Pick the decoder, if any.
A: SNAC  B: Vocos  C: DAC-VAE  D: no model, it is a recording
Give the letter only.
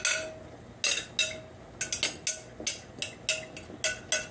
D